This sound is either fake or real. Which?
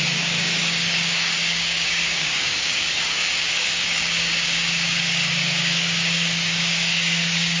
fake